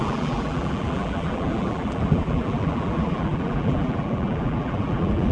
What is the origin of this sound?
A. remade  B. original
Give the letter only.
A